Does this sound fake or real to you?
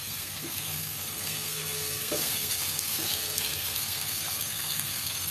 fake